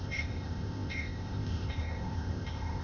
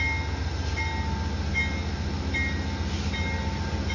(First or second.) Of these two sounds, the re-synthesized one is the first